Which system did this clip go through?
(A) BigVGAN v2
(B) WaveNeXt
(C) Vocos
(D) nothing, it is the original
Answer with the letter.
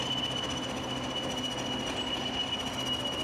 D